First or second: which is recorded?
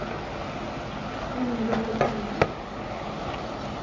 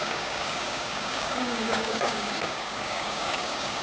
first